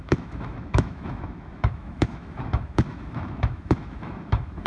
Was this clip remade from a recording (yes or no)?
yes